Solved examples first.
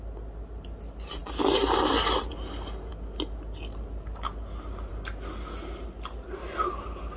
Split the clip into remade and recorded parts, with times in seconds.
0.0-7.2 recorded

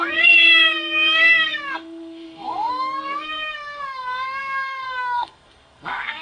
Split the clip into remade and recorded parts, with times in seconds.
0.0-6.2 remade

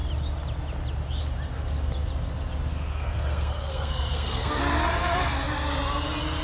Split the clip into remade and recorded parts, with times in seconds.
0.0-2.7 recorded; 2.7-4.6 remade; 4.6-6.4 recorded

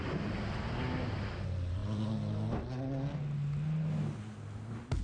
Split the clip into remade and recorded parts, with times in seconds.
0.0-5.0 recorded

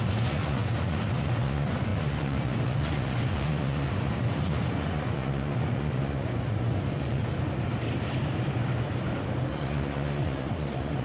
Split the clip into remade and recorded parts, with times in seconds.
0.0-7.2 remade; 7.2-9.5 recorded; 9.5-11.0 remade

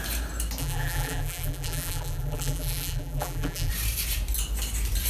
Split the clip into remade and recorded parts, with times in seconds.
0.0-0.6 recorded; 0.6-3.7 remade; 3.7-5.1 recorded

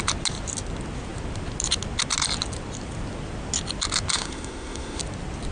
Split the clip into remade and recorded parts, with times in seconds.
0.0-4.1 recorded; 4.1-5.0 remade; 5.0-5.5 recorded